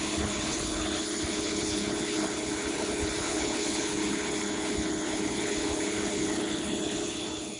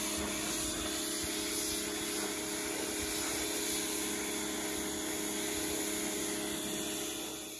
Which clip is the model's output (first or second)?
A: first